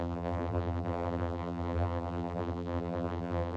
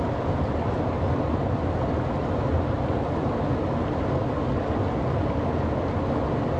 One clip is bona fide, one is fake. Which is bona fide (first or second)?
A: second